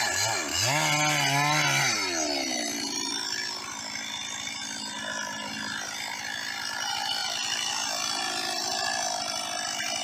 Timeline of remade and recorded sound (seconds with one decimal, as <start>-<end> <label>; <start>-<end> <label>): 0.0-10.0 recorded